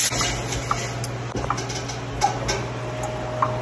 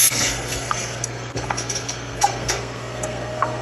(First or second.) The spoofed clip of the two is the second